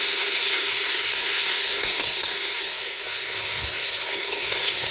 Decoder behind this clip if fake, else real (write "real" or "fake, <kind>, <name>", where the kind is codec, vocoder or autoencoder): fake, codec, SNAC